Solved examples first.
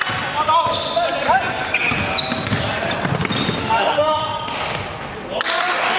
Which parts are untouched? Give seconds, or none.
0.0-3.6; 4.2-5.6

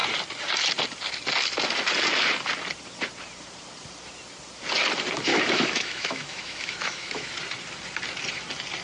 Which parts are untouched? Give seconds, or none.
0.0-5.3; 7.3-8.8

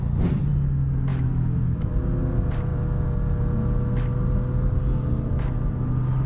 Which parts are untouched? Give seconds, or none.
0.0-1.1; 1.9-6.3

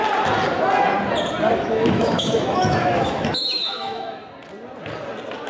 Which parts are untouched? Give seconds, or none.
0.0-1.5; 4.2-5.5